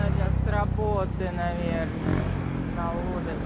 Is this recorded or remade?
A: recorded